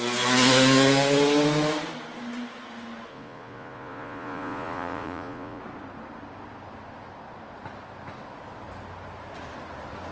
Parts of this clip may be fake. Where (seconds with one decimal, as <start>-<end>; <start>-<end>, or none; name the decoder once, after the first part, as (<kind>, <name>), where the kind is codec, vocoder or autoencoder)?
3.1-5.6 (vocoder, Vocos)